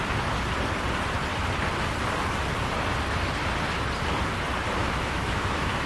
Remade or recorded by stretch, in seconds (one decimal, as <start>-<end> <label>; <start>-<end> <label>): 0.0-4.8 recorded; 4.8-5.9 remade